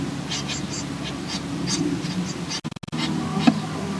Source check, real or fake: real